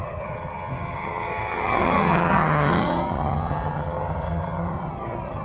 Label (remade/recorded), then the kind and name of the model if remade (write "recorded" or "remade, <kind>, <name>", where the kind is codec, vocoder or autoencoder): remade, vocoder, HiFi-GAN